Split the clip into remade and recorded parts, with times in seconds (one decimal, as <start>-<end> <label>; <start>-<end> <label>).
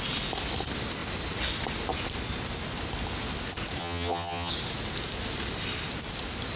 0.0-3.8 recorded; 3.8-4.5 remade; 4.5-6.6 recorded